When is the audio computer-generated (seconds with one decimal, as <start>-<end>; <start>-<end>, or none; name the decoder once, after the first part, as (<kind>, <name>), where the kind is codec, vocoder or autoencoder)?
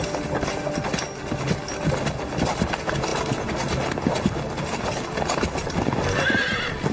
none